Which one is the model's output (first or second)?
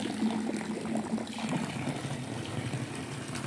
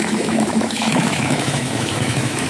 second